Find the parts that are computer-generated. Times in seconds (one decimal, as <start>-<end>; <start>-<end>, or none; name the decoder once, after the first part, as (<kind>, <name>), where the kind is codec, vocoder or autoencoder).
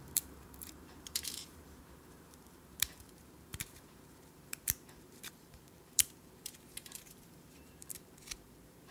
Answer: 0.0-8.9 (vocoder, BigVGAN v2)